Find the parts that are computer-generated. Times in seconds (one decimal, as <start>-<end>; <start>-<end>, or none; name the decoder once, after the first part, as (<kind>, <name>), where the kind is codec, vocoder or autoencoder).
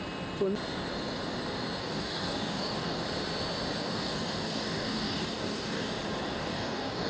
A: 1.8-3.0 (codec, DAC); 3.8-5.9; 6.4-7.1